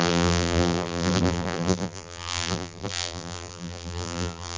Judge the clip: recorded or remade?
remade